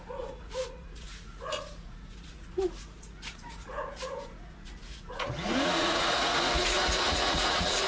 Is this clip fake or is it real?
fake